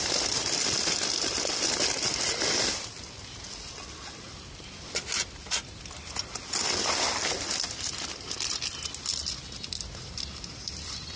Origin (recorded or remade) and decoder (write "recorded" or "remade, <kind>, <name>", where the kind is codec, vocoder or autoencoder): recorded